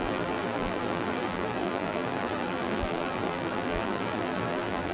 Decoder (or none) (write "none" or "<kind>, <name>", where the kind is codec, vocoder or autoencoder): vocoder, BigVGAN v2